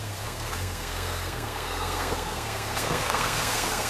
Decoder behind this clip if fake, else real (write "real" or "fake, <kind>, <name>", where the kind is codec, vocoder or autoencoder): fake, codec, SNAC